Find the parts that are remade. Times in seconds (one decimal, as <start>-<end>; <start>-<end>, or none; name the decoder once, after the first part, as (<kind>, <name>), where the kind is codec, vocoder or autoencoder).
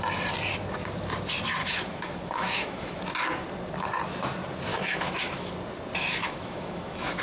1.6-3.0 (autoencoder, DAC-VAE); 4.7-5.5; 6.2-7.2